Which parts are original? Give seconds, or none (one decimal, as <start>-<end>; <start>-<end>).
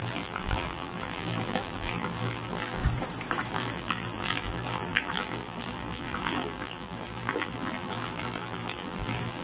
2.8-3.5